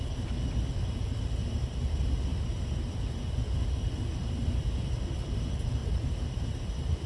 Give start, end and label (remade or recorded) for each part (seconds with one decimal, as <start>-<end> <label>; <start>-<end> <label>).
0.0-4.1 recorded; 4.1-4.6 remade; 4.6-5.8 recorded; 5.8-7.1 remade